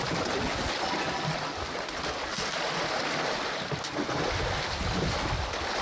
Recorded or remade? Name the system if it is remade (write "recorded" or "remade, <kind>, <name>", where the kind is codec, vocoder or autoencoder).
recorded